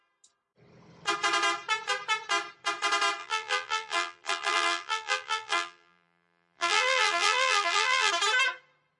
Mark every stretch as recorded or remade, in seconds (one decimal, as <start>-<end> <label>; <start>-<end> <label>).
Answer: 0.0-3.2 recorded; 3.2-8.1 remade; 8.1-9.0 recorded